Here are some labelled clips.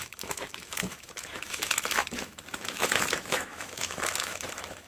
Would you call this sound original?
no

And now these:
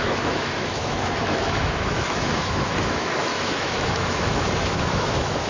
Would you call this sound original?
no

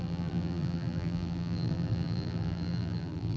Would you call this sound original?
no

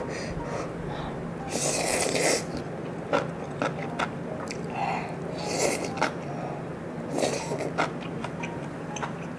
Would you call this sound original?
yes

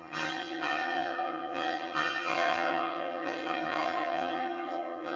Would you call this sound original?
no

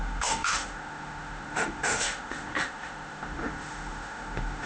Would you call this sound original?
no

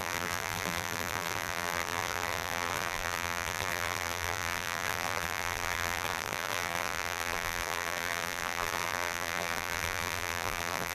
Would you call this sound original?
no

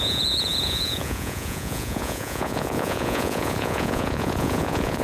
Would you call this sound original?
no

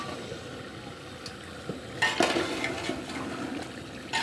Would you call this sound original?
yes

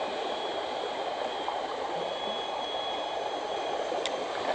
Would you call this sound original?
no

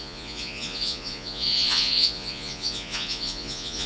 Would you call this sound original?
no